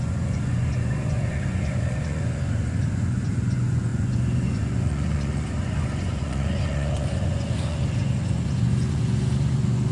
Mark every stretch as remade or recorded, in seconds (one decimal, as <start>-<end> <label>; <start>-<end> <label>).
0.0-9.9 remade